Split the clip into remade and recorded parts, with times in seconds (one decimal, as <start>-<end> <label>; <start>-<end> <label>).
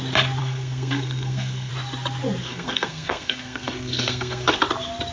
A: 0.0-0.4 recorded; 0.4-1.7 remade; 1.7-2.4 recorded; 2.4-4.6 remade; 4.6-5.1 recorded